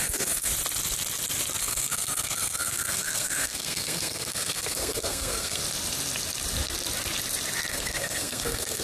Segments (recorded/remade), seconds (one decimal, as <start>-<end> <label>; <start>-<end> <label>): 0.0-0.5 remade; 0.5-1.6 recorded; 1.6-5.6 remade; 5.6-7.7 recorded; 7.7-8.8 remade